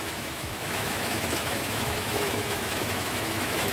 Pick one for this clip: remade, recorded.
remade